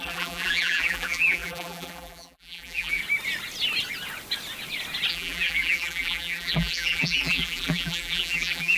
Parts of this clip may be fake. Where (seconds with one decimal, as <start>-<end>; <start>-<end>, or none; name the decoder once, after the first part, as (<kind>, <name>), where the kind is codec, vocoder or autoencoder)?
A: 0.0-3.0 (vocoder, BigVGAN v2); 5.1-8.8

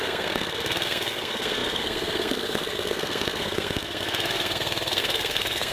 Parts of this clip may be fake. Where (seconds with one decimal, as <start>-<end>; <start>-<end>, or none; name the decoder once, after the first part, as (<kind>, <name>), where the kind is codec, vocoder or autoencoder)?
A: 0.0-5.7 (codec, SNAC)